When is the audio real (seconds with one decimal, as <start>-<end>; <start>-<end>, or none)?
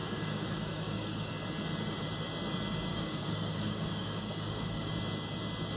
1.3-2.9; 4.9-5.8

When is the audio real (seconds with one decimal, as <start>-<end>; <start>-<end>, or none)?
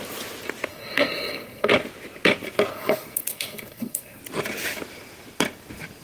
0.0-0.7; 1.7-2.7; 4.2-6.0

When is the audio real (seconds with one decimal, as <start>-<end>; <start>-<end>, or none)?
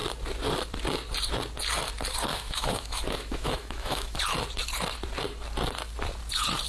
0.0-2.3; 4.2-6.7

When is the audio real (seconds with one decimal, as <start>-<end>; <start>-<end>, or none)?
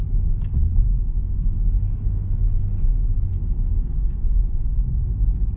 0.0-0.7; 4.1-5.6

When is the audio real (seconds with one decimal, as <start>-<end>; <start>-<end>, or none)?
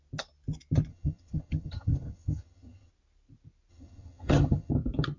0.0-0.9; 2.9-3.7; 4.7-5.2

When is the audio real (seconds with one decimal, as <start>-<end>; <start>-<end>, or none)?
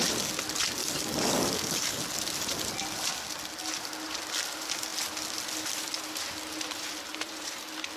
0.0-0.8; 2.0-8.0